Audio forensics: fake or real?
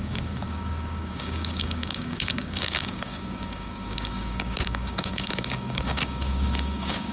fake